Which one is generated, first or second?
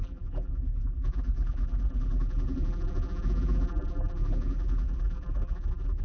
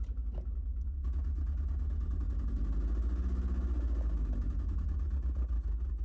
first